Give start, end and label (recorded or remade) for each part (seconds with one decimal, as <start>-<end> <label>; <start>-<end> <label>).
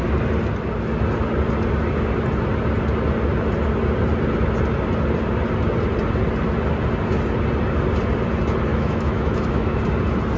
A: 0.0-8.7 recorded; 8.7-9.8 remade; 9.8-10.4 recorded